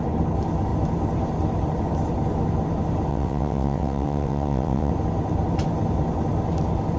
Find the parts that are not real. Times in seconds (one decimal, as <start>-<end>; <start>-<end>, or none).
3.1-4.9